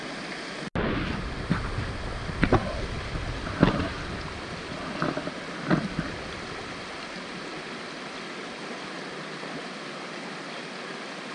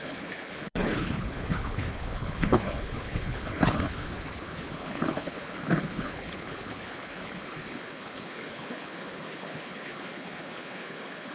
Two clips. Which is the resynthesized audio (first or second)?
second